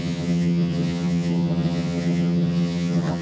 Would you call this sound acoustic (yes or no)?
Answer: no